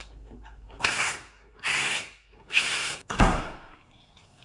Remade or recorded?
remade